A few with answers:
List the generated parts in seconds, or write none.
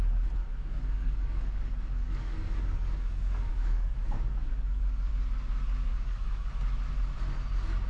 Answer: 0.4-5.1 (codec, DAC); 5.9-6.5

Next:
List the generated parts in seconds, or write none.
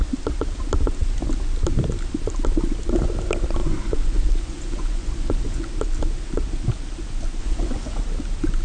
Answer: 3.6-5.7 (vocoder, Vocos); 7.4-8.0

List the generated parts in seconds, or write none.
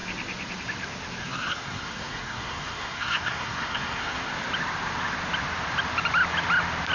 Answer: 1.2-4.3 (codec, SNAC)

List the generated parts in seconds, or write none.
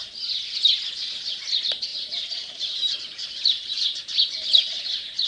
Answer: 1.9-5.3 (vocoder, BigVGAN v2)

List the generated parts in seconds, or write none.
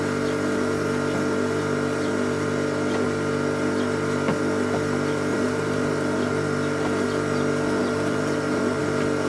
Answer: 5.3-5.9 (vocoder, BigVGAN v2); 7.8-8.8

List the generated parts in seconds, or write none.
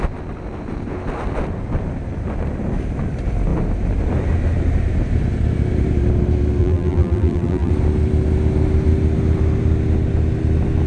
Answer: 6.6-7.7 (vocoder, BigVGAN v2)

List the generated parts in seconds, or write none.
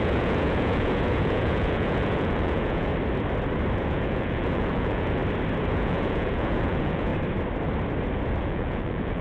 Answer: 0.0-2.9 (vocoder, Vocos); 3.8-5.2; 5.7-7.1; 8.4-9.2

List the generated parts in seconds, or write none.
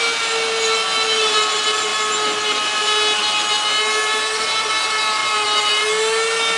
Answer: none